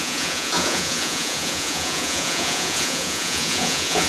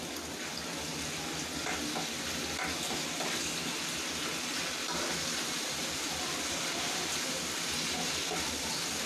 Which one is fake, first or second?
first